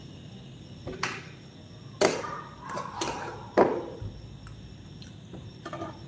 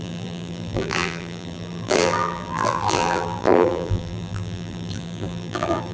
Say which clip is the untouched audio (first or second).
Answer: first